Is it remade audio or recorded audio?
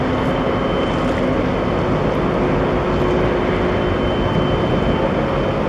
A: recorded